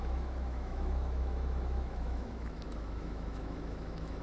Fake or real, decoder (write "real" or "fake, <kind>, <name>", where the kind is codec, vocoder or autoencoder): fake, autoencoder, DAC-VAE